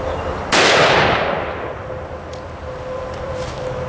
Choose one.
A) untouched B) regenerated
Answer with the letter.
A